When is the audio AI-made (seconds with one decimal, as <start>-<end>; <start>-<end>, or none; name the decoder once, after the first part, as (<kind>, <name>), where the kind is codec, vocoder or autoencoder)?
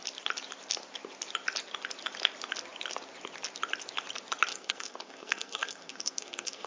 4.5-6.7 (codec, SNAC)